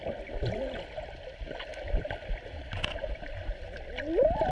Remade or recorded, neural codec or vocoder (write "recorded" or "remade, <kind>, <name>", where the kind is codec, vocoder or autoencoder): recorded